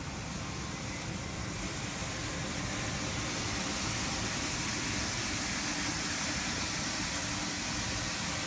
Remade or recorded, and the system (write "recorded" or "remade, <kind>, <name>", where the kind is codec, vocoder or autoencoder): recorded